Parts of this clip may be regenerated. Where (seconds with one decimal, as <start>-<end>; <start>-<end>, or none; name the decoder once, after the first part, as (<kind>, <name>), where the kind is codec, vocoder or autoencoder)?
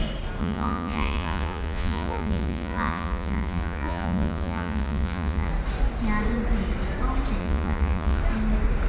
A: 0.4-5.5 (vocoder, Vocos); 7.4-8.2